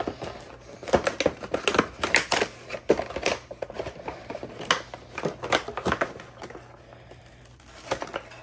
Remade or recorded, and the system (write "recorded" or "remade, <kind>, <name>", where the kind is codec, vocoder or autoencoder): recorded